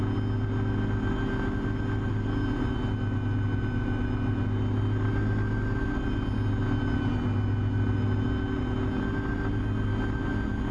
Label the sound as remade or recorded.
recorded